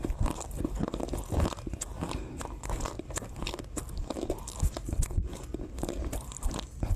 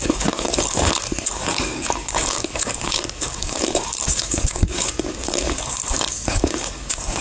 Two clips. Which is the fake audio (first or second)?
second